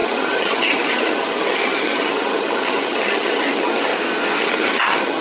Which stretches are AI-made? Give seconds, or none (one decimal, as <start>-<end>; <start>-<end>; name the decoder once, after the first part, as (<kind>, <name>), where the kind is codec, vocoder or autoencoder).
0.0-3.9 (vocoder, HiFi-GAN); 4.4-5.2

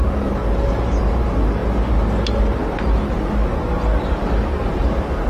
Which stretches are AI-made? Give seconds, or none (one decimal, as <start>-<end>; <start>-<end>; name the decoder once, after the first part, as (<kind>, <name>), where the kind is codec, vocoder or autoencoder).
0.0-0.4 (vocoder, BigVGAN v2); 1.0-1.6; 4.8-5.3

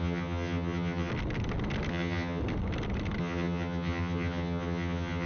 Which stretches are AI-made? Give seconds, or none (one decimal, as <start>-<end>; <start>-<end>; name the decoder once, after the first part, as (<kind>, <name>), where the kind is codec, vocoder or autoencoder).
0.0-1.1 (vocoder, HiFi-GAN); 1.9-2.4; 3.2-5.3

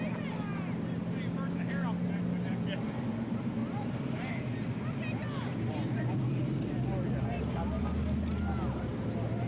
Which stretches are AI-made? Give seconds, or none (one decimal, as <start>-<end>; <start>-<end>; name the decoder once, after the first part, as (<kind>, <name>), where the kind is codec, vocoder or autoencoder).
3.6-4.3 (vocoder, BigVGAN v2); 5.2-7.8

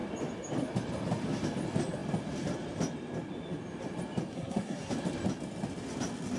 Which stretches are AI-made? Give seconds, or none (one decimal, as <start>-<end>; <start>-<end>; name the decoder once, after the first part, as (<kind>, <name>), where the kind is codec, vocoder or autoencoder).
4.3-4.9 (codec, SNAC)